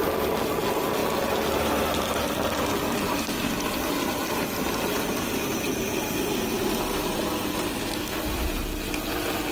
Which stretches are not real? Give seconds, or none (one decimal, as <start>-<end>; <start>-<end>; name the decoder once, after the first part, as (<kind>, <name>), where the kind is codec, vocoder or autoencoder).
none